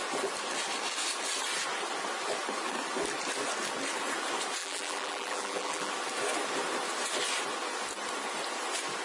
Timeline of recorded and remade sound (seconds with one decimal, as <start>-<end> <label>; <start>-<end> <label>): 0.0-4.6 recorded; 4.6-5.9 remade; 5.9-9.0 recorded